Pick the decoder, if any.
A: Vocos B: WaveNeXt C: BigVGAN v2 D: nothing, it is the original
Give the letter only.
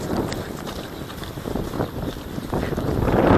D